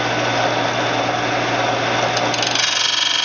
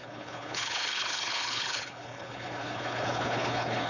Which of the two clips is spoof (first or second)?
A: second